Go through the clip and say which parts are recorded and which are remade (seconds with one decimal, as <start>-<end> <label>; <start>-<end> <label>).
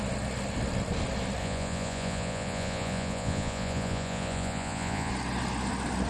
0.0-1.4 recorded; 1.4-5.1 remade; 5.1-6.1 recorded